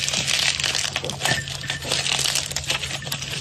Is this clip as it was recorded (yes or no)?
yes